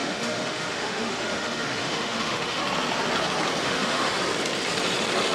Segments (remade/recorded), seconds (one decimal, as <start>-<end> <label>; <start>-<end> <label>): 0.0-2.6 remade; 2.6-3.6 recorded; 3.6-4.2 remade; 4.2-5.3 recorded